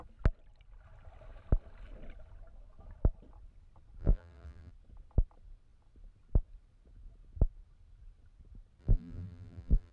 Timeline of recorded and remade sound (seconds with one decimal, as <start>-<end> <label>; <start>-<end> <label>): 0.0-4.0 recorded; 4.0-4.7 remade; 4.7-8.8 recorded; 8.8-9.9 remade